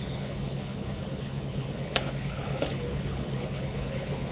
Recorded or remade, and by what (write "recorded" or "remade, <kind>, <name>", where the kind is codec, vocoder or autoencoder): remade, codec, HILCodec